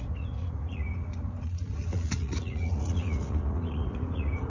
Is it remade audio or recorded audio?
remade